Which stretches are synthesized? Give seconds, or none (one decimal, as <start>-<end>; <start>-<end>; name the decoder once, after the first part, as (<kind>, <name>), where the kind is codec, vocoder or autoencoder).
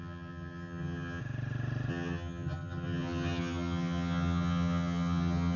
0.0-1.2 (vocoder, HiFi-GAN); 1.9-5.6